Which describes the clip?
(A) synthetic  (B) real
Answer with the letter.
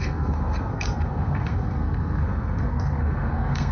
A